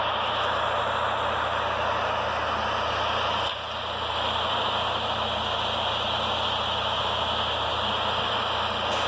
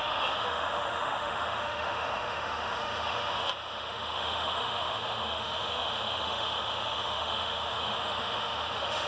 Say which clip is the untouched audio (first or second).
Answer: first